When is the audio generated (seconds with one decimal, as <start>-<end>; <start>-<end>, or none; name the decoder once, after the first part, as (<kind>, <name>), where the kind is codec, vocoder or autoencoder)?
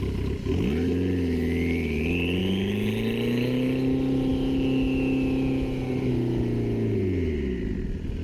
none